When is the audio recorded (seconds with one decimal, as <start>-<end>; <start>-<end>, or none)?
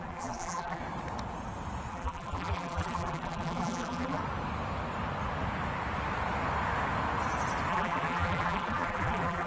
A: 0.8-1.9; 4.2-7.7